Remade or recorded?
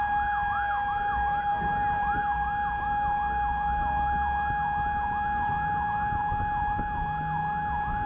recorded